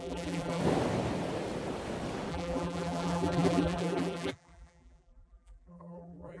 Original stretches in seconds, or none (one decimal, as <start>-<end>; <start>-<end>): 0.6-2.3